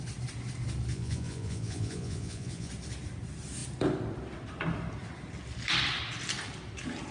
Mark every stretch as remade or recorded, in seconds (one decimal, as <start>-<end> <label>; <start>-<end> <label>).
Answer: 0.0-0.9 recorded; 0.9-2.7 remade; 2.7-7.1 recorded